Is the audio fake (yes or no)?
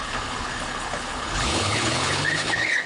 yes